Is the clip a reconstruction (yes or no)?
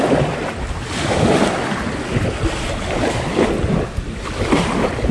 no